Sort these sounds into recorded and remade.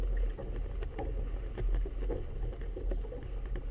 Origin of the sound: recorded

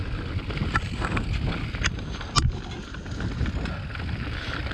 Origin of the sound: recorded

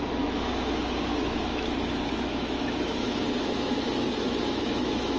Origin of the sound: remade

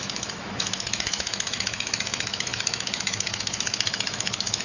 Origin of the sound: remade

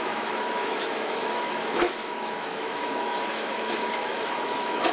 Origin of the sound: remade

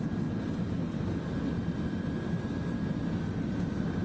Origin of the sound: recorded